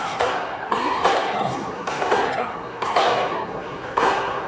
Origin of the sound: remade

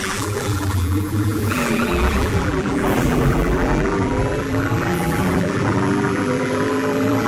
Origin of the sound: remade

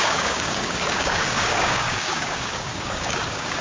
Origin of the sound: remade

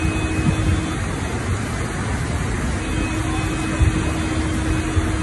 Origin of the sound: recorded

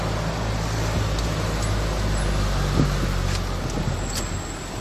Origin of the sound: recorded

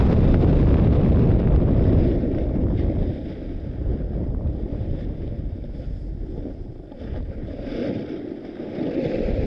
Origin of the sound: remade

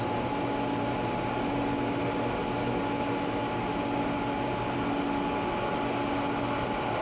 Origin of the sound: recorded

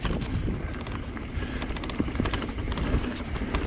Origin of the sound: recorded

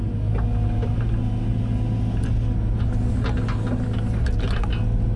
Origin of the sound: recorded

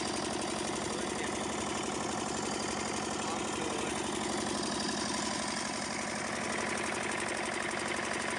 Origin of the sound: recorded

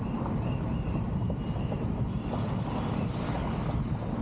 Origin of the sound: recorded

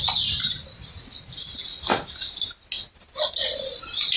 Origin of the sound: recorded